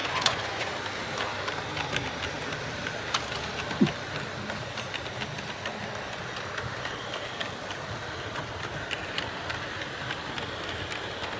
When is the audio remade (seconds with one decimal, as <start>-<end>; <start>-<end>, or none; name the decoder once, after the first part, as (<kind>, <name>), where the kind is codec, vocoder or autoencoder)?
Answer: 0.0-0.7 (vocoder, Vocos)